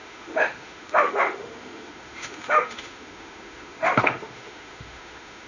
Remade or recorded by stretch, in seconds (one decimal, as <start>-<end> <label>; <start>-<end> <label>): 0.0-5.5 remade